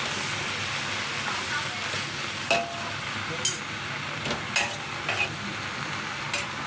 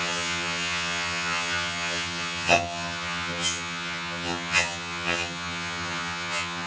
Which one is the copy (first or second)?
second